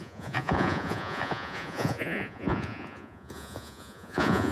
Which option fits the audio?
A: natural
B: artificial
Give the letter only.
B